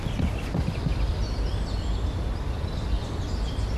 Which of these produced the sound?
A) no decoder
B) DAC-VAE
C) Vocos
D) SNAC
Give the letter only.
A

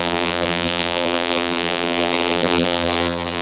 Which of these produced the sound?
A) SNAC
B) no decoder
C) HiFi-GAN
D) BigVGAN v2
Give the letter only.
D